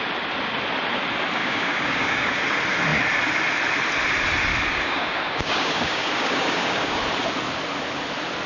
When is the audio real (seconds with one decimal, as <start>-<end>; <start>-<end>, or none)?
0.0-1.4; 2.4-4.7; 7.0-8.5